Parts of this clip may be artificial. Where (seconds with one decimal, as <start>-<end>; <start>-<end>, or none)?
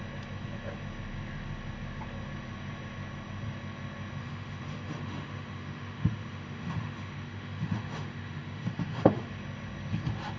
4.2-9.3